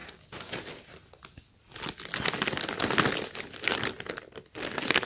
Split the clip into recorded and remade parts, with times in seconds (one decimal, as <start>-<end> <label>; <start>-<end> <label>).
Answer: 0.0-5.1 recorded